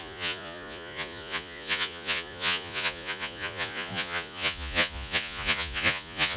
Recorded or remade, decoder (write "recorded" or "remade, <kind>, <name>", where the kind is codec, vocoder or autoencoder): remade, vocoder, Vocos